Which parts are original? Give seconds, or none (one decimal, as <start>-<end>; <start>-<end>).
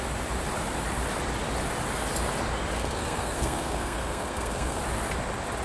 0.0-2.8; 4.8-5.6